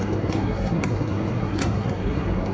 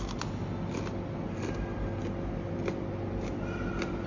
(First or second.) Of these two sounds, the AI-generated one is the first